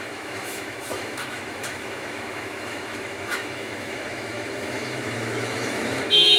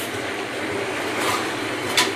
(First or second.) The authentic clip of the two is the second